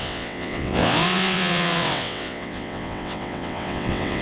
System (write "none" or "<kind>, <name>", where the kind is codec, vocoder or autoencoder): vocoder, WaveNeXt